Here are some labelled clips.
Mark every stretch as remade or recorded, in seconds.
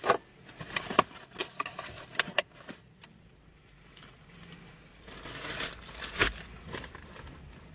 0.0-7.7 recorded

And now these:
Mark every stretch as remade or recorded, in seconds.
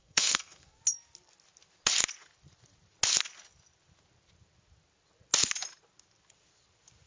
0.0-0.8 remade; 0.8-7.1 recorded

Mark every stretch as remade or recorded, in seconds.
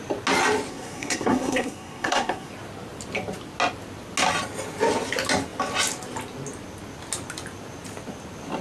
0.0-0.7 recorded; 0.7-2.5 remade; 2.5-8.6 recorded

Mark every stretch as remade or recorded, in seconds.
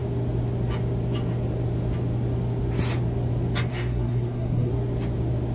0.0-3.7 recorded; 3.7-4.7 remade; 4.7-5.5 recorded